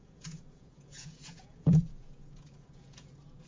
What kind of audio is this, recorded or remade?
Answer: remade